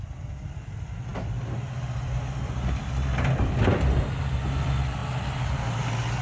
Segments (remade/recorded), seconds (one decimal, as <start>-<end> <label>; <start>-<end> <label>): 0.0-6.2 recorded